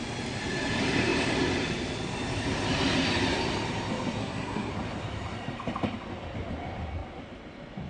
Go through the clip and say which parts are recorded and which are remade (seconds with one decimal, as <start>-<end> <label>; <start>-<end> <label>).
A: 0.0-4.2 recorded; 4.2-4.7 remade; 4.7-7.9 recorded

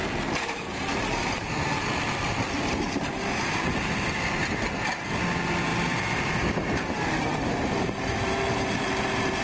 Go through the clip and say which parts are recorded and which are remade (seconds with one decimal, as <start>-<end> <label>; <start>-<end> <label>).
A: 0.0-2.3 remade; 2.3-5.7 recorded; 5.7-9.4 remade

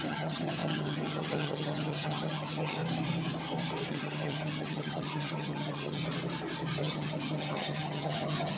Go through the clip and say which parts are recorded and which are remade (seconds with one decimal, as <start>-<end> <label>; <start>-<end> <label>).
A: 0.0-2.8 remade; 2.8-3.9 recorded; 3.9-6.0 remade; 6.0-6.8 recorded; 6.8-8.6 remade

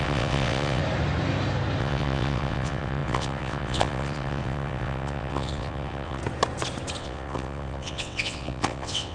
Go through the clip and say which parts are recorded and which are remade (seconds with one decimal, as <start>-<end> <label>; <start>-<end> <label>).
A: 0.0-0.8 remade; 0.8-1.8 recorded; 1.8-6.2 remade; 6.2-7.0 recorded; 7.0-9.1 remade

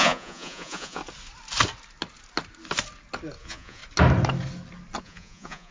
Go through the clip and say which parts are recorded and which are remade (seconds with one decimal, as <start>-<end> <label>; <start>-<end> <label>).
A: 0.0-1.0 remade; 1.0-3.4 recorded; 3.4-3.8 remade; 3.8-5.0 recorded; 5.0-5.7 remade

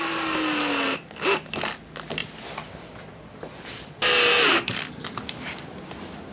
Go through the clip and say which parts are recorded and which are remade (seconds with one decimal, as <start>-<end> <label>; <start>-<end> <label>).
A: 0.0-2.2 recorded; 2.2-6.3 remade

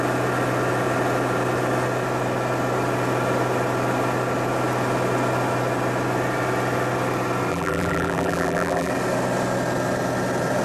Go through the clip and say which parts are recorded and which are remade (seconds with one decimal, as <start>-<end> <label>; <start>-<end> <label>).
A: 0.0-7.5 recorded; 7.5-8.9 remade; 8.9-10.6 recorded

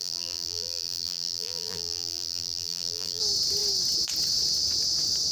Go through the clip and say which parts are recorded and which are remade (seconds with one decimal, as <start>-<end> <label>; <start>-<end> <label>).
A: 0.0-3.2 remade; 3.2-5.3 recorded